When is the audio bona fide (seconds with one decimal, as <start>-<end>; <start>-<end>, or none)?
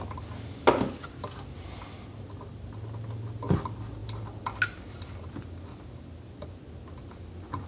0.0-7.7